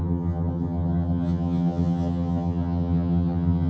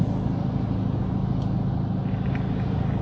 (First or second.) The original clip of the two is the second